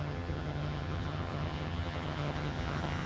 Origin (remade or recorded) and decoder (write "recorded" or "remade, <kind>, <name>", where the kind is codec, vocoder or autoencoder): remade, vocoder, HiFi-GAN